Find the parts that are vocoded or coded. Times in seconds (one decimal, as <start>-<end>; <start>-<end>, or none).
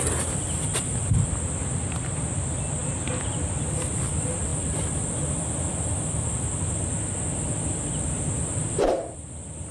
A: none